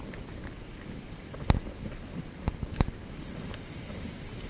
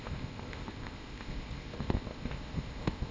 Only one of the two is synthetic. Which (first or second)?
second